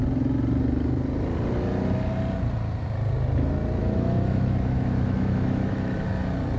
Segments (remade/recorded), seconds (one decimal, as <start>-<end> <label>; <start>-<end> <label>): 0.0-3.8 recorded; 3.8-6.0 remade; 6.0-6.6 recorded